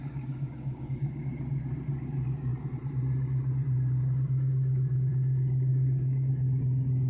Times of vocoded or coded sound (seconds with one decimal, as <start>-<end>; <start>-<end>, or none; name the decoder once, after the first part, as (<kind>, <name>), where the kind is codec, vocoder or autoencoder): 0.0-1.3 (codec, DAC); 5.7-6.3